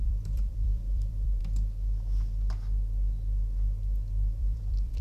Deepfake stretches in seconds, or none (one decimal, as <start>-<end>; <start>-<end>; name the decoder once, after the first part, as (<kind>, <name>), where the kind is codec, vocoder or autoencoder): 0.0-1.4 (vocoder, BigVGAN v2); 4.4-5.0